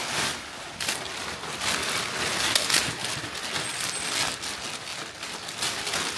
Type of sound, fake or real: real